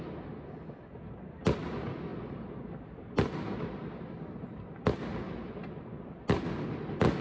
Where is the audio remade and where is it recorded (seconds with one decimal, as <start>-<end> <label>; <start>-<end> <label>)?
0.0-7.2 recorded